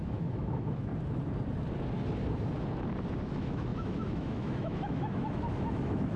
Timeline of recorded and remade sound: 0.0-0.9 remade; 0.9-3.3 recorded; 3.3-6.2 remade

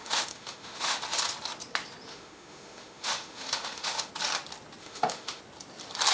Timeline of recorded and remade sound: 0.0-1.0 remade; 1.0-2.1 recorded; 2.1-4.1 remade; 4.1-4.8 recorded; 4.8-5.4 remade; 5.4-6.1 recorded

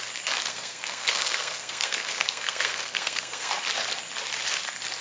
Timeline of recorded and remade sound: 0.0-0.5 recorded; 0.5-3.5 remade; 3.5-5.0 recorded

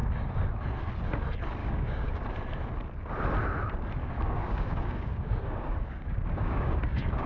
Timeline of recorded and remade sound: 0.0-1.6 recorded; 1.6-2.2 remade; 2.2-4.0 recorded; 4.0-7.3 remade

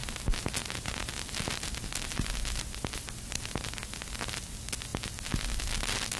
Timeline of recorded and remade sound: 0.0-6.2 recorded

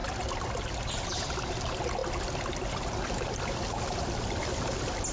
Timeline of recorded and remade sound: 0.0-5.1 recorded